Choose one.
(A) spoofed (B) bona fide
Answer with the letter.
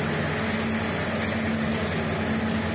B